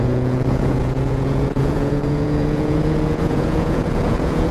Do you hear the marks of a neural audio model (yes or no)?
yes